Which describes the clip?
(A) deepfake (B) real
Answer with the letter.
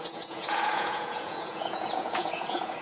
A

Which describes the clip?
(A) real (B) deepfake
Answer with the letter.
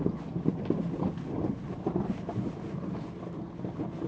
A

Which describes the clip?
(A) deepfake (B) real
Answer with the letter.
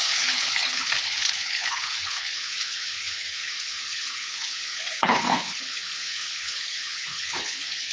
A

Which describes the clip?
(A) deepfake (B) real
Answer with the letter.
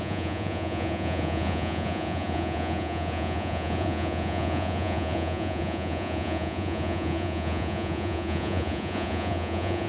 A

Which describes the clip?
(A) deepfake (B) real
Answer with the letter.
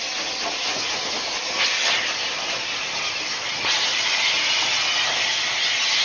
B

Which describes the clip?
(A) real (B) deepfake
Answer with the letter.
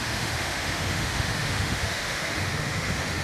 B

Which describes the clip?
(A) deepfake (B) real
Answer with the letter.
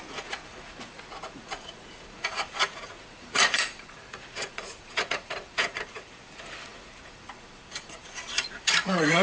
A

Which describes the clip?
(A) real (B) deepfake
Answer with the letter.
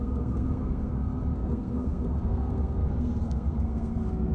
B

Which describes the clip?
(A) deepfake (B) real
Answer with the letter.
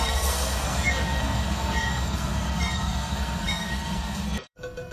A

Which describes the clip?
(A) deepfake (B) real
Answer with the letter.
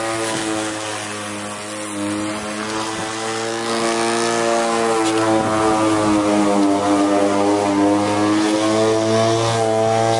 B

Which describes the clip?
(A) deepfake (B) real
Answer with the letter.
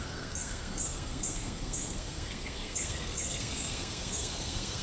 A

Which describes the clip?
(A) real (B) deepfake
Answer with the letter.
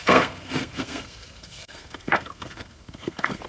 B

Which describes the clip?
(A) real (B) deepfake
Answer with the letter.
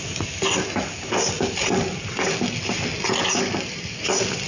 A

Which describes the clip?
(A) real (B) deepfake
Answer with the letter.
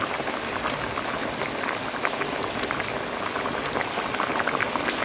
A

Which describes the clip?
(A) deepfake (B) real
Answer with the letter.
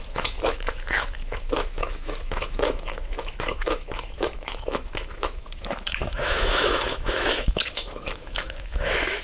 A